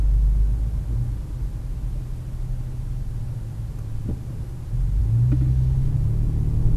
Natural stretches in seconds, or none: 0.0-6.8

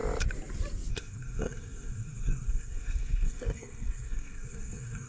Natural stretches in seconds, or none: 0.0-0.9

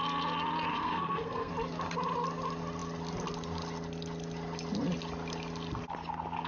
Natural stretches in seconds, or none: 0.0-0.7; 1.5-6.5

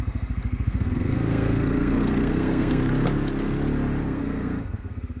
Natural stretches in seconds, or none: 2.9-4.0

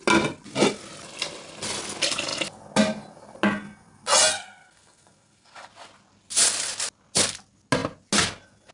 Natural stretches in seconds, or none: 0.0-4.3; 5.7-8.7

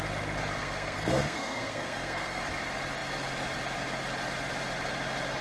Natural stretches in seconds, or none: 0.0-0.6; 2.4-5.4

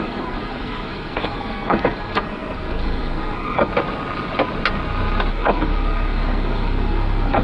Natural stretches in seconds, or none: 3.7-5.3